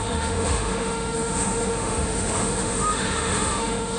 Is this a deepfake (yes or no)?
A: yes